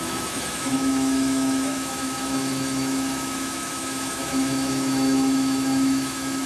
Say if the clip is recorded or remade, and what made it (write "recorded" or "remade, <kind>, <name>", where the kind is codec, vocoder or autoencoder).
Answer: remade, autoencoder, DAC-VAE